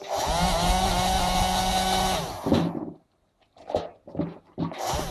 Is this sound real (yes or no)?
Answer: yes